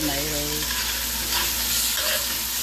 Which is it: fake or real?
real